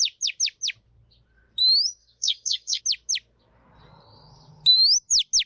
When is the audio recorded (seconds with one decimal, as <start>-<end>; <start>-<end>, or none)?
0.0-2.0; 2.8-5.5